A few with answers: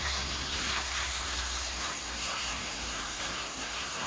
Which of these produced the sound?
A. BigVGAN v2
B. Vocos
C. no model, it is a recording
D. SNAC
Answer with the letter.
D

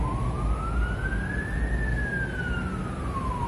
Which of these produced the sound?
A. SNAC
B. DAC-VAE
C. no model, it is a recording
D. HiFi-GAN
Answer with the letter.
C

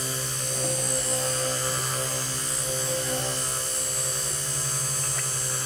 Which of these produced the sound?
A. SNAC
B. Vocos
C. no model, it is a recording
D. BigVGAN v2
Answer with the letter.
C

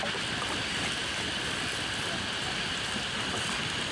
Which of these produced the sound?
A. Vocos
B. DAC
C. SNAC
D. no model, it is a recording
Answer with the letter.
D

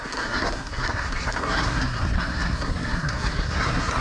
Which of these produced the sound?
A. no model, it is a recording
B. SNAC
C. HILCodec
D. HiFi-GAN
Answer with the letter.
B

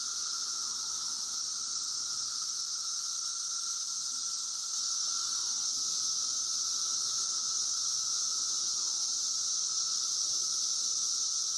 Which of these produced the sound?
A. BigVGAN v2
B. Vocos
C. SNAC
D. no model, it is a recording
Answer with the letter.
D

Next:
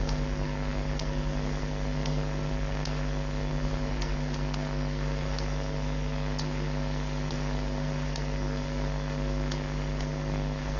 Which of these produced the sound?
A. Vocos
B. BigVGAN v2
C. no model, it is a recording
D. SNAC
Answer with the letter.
D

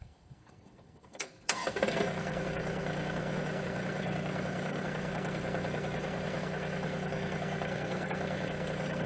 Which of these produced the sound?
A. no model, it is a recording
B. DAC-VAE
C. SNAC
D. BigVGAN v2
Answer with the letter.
C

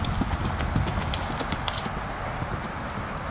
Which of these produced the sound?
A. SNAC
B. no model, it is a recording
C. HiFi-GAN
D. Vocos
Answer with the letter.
B